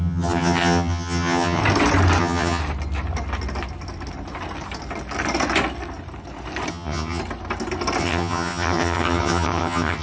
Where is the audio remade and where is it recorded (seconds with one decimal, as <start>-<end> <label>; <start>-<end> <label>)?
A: 0.0-1.6 remade; 1.6-2.2 recorded; 2.2-2.6 remade; 2.6-6.7 recorded; 6.7-7.2 remade; 7.2-8.0 recorded; 8.0-10.0 remade